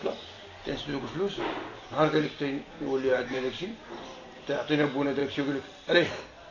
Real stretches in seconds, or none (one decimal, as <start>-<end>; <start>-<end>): 0.0-3.1; 3.8-6.5